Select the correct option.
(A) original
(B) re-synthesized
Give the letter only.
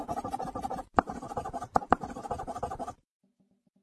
A